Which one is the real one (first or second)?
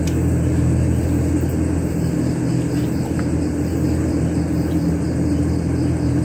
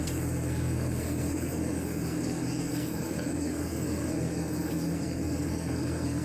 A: first